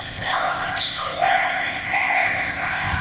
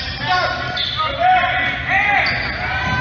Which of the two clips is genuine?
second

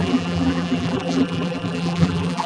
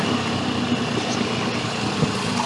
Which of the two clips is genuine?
second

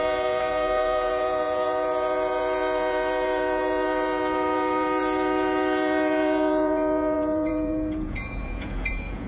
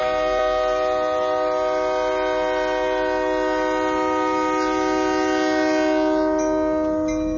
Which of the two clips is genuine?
second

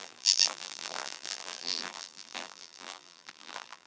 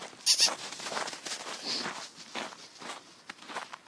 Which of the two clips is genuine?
second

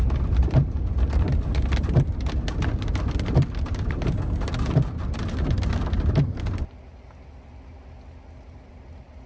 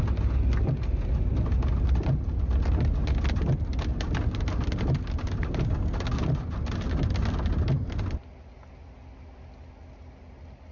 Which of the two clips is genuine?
second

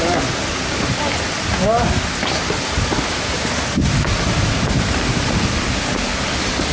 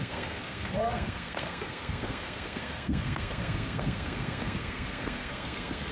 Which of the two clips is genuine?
first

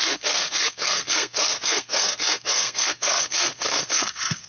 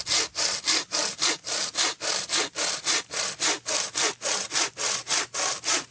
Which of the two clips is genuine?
second